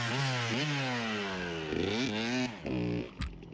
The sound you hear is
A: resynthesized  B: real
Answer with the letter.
B